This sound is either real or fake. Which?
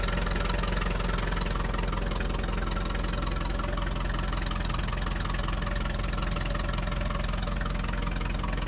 real